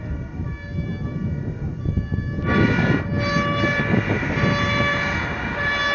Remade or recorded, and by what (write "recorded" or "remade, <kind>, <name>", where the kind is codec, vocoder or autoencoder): recorded